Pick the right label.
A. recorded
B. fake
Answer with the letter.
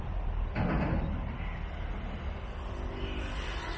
A